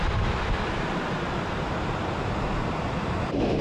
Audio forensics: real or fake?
real